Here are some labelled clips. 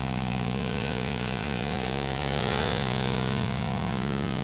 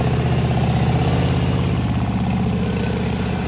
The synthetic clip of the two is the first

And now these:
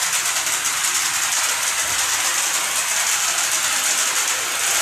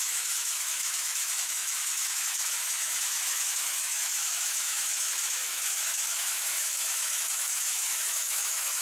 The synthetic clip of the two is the second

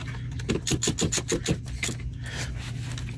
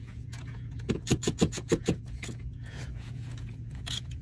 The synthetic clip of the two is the second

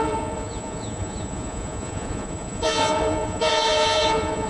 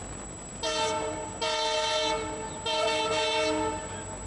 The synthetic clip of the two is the first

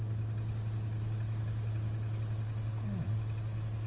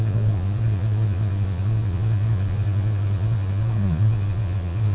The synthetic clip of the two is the second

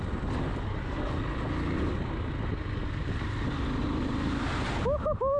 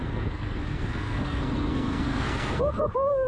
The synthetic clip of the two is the second